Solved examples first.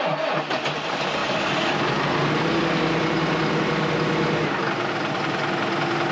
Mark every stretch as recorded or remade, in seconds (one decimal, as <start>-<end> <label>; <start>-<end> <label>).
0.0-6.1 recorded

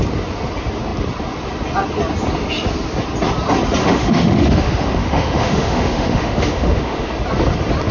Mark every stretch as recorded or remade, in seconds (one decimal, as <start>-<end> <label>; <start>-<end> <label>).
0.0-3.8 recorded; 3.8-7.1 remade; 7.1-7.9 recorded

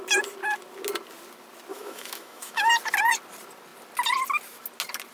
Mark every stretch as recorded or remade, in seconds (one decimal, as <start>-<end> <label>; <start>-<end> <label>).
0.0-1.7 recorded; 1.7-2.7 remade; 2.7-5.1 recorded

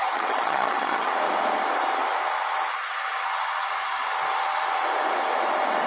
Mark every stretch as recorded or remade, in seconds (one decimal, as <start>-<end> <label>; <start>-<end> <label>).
0.0-1.1 remade; 1.1-5.9 recorded

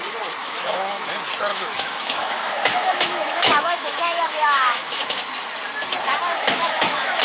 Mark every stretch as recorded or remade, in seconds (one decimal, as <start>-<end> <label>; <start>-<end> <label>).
0.0-0.4 recorded; 0.4-1.1 remade; 1.1-1.5 recorded; 1.5-5.2 remade; 5.2-6.3 recorded; 6.3-7.2 remade

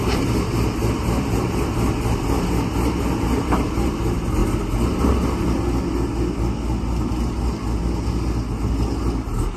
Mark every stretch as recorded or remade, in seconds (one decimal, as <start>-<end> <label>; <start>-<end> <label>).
0.0-9.6 recorded